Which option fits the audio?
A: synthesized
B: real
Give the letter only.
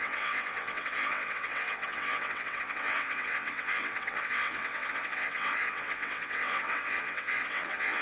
A